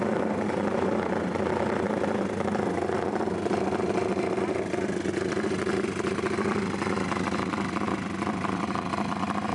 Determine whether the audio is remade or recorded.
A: recorded